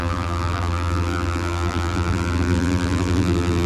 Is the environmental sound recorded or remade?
remade